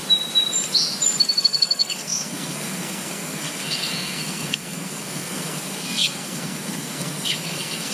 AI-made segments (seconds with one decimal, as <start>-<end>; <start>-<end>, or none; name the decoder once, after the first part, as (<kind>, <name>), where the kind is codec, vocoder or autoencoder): 1.4-7.9 (codec, SNAC)